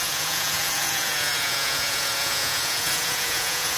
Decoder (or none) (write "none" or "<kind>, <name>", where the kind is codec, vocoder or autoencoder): vocoder, Vocos